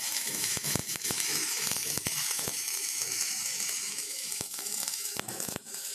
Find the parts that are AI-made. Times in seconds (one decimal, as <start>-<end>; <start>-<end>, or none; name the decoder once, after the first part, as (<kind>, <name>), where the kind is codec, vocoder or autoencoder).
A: 0.0-5.9 (autoencoder, DAC-VAE)